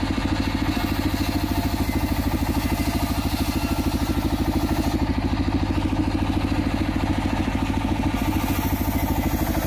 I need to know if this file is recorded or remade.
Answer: recorded